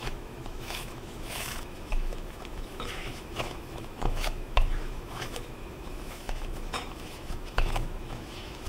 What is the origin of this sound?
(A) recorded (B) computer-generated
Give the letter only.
B